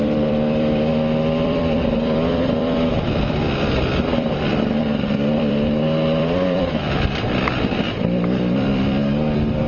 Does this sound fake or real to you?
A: fake